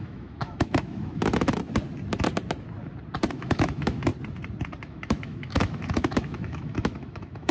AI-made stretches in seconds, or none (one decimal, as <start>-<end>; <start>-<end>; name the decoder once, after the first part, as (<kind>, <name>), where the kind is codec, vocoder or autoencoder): 0.0-1.6 (autoencoder, DAC-VAE); 3.3-4.1; 4.8-7.5

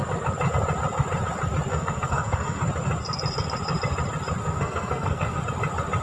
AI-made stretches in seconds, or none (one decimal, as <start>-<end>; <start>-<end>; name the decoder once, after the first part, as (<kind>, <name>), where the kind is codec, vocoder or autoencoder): 1.7-2.6 (codec, SNAC); 4.4-5.4

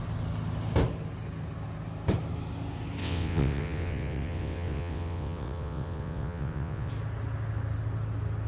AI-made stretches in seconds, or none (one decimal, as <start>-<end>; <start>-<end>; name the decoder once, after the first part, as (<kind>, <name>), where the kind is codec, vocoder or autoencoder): 3.0-6.9 (vocoder, WaveNeXt)

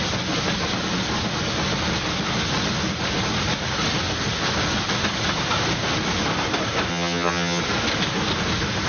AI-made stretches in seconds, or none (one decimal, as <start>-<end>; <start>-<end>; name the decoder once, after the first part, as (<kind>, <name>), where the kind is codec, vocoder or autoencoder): 6.9-7.6 (vocoder, HiFi-GAN)

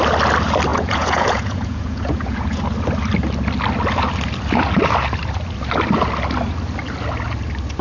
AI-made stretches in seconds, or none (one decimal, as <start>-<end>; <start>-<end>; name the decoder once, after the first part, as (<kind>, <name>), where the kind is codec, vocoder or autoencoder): 0.7-2.6 (vocoder, Vocos)

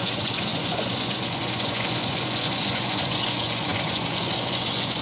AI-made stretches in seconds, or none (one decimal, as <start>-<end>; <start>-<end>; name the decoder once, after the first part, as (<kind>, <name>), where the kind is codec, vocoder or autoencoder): 0.0-5.0 (vocoder, Vocos)

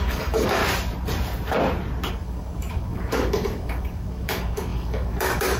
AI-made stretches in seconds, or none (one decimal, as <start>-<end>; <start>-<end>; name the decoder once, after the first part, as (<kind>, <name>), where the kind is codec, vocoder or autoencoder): 0.0-0.6 (codec, DAC); 2.1-5.6